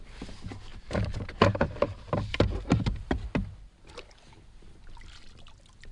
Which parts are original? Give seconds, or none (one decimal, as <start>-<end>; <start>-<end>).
0.0-0.7; 3.1-5.9